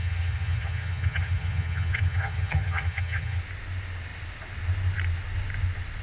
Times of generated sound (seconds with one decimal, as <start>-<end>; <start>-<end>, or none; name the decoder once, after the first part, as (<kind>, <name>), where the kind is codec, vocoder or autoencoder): 0.0-3.4 (vocoder, HiFi-GAN)